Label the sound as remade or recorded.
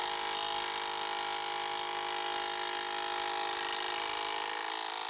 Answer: recorded